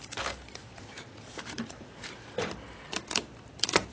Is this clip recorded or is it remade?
remade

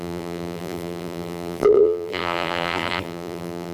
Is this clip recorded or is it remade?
remade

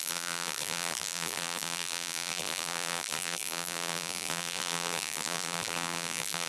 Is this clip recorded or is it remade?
remade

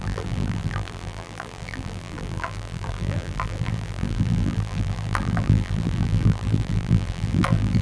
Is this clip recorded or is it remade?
remade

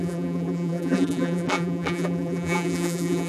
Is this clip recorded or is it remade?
remade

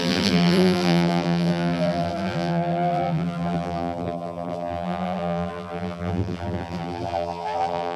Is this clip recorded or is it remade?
remade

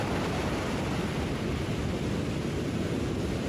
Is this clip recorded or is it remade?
remade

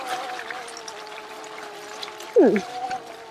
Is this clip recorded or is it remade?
recorded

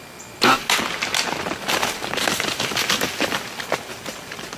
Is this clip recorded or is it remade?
recorded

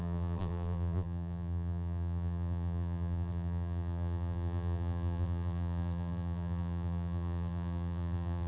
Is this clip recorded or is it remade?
remade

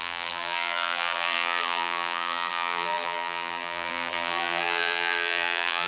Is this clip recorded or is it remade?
remade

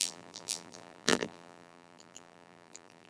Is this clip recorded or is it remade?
remade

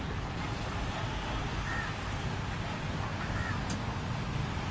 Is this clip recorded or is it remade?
recorded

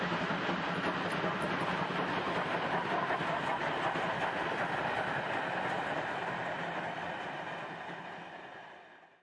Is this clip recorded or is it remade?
recorded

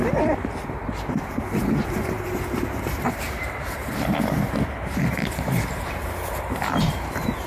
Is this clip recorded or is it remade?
remade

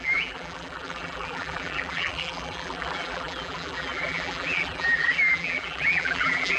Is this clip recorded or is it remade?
remade